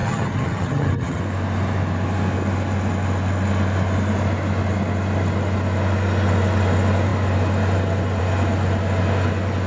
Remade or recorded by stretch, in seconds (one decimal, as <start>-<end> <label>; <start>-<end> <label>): 0.0-1.2 remade; 1.2-9.7 recorded